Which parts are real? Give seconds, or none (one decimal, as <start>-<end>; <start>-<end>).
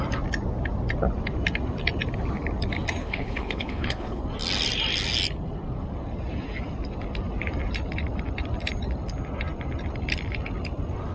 0.0-3.0; 4.2-11.1